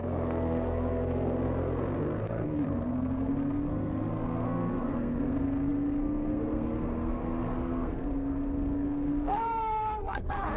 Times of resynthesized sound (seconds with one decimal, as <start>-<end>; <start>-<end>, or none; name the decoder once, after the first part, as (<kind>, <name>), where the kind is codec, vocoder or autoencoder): 0.0-10.6 (codec, SNAC)